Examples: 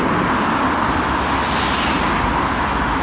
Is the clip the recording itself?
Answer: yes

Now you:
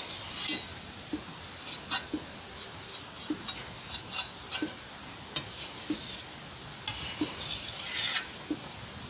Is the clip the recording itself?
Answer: yes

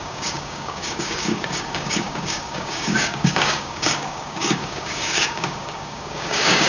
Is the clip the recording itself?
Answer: no